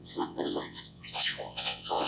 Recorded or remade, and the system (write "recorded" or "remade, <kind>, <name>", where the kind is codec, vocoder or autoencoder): remade, vocoder, WaveNeXt